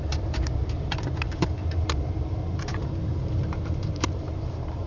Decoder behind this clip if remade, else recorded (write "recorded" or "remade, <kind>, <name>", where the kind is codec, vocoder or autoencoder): remade, vocoder, BigVGAN v2